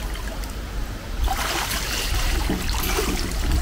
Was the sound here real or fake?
real